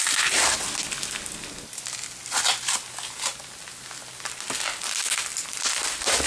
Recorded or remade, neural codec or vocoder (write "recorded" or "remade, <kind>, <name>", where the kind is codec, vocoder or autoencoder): recorded